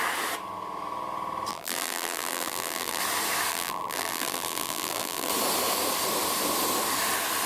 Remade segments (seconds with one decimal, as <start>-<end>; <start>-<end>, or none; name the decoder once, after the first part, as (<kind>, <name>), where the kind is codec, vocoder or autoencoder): 1.5-3.0 (vocoder, BigVGAN v2); 3.5-5.3